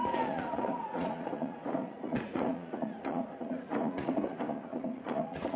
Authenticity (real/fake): fake